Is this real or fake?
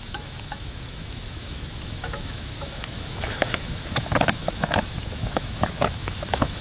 fake